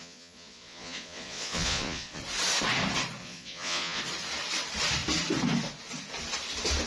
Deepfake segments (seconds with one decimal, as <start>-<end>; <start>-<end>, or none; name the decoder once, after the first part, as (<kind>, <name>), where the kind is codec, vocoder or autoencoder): 0.0-2.2 (vocoder, Vocos); 3.2-4.0